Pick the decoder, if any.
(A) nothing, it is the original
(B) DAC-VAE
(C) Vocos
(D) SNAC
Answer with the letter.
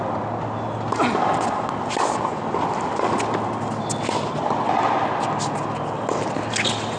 A